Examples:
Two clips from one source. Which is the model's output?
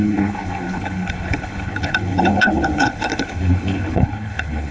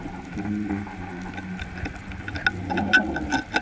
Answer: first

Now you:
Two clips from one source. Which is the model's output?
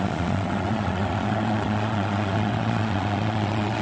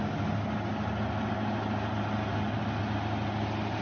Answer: first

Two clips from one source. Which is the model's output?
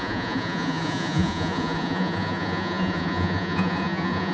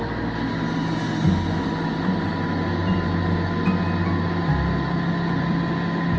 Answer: first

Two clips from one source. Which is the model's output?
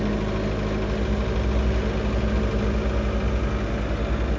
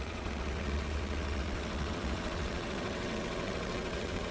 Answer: second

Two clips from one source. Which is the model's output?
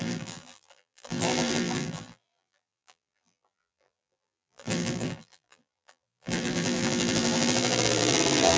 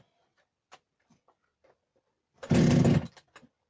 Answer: first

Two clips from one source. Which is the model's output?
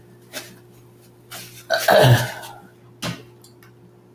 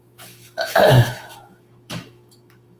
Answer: second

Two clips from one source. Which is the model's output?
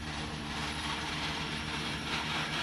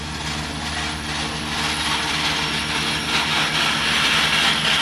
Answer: first